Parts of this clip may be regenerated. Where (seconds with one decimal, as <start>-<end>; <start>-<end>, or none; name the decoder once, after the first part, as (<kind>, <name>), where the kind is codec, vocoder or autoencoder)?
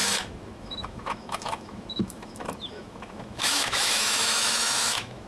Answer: 0.0-5.3 (autoencoder, DAC-VAE)